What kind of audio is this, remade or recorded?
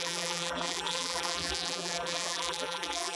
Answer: remade